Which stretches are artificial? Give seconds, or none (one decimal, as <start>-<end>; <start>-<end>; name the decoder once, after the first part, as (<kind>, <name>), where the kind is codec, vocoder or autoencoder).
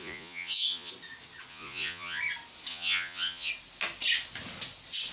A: 0.0-0.9 (vocoder, Vocos); 1.5-2.2; 2.7-3.5